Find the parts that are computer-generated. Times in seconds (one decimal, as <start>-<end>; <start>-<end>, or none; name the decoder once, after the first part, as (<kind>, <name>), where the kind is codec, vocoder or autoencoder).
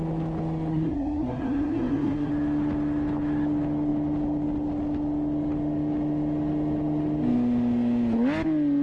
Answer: 0.7-2.3 (codec, SNAC)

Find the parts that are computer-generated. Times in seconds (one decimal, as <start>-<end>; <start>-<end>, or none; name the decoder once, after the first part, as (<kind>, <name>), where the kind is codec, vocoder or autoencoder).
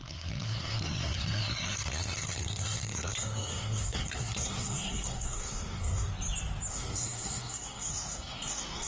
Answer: 0.0-6.1 (codec, SNAC); 6.7-8.9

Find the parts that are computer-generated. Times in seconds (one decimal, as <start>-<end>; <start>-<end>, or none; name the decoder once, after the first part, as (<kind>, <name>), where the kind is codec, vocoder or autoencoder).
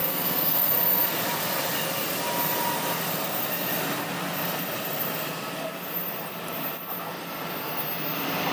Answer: 0.0-0.7 (codec, SNAC)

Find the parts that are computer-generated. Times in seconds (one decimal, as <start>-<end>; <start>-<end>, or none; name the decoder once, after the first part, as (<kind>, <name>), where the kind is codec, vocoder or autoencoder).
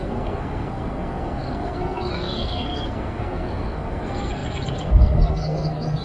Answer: 0.0-6.0 (codec, SNAC)